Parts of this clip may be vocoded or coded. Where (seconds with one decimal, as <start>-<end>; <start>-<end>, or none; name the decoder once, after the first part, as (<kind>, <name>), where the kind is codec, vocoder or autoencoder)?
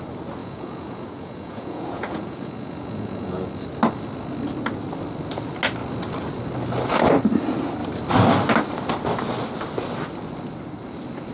0.4-3.5 (vocoder, Vocos)